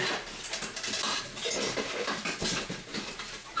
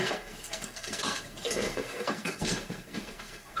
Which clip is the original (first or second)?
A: first